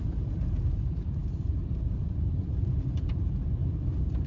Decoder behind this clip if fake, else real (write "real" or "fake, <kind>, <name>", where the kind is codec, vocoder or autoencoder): fake, vocoder, BigVGAN v2